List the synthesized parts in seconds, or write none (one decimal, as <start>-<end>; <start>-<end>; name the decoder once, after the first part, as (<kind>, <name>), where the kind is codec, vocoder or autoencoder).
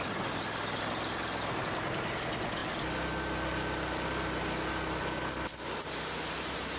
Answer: none